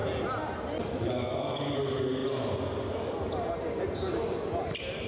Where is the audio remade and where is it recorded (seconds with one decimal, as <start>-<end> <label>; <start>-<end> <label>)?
0.0-5.1 recorded